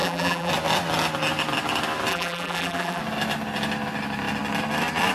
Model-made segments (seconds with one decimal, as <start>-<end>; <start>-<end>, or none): 0.0-0.5; 2.1-3.0